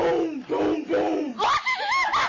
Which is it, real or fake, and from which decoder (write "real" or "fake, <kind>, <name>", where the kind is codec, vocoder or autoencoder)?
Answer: real